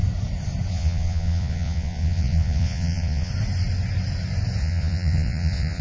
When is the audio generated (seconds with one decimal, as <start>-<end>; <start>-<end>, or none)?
0.7-3.3; 4.6-5.8

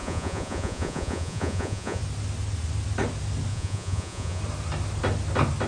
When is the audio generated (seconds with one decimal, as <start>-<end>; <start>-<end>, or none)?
0.0-2.0; 3.5-4.4

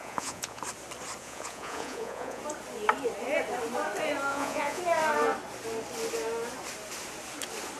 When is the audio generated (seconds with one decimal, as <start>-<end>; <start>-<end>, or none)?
0.0-0.6; 1.2-2.4; 4.3-4.8